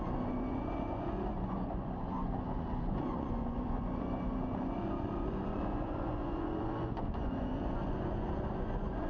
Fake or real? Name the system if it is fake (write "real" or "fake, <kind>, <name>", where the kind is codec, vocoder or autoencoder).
fake, vocoder, Vocos